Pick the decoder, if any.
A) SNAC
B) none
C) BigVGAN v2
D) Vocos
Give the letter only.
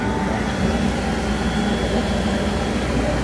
B